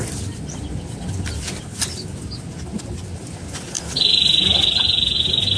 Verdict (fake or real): real